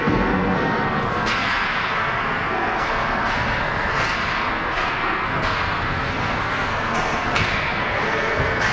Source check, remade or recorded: remade